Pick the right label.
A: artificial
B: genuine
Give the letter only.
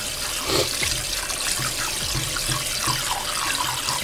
B